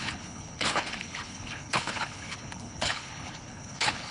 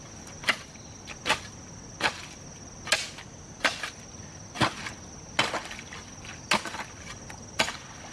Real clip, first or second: second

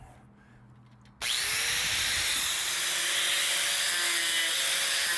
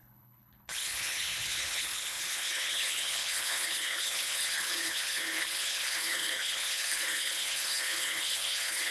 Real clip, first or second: first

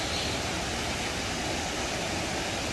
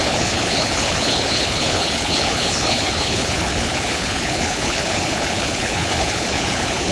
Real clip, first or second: first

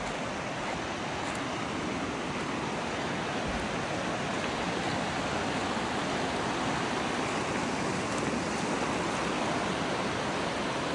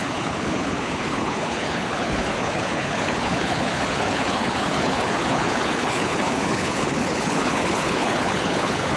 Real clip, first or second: first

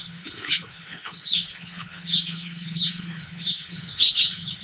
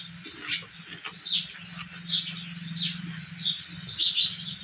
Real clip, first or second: second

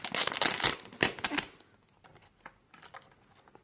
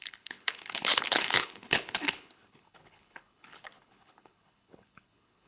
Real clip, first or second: first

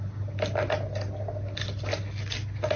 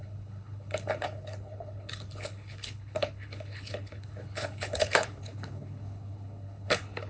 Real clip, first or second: first